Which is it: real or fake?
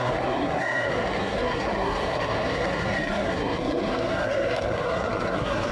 fake